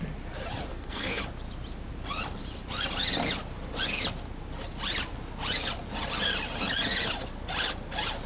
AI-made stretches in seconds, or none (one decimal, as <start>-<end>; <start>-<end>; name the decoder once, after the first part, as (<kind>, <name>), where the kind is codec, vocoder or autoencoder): 0.7-1.2 (codec, SNAC)